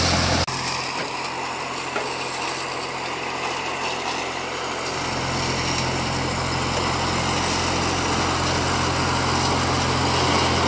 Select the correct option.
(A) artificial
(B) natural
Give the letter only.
B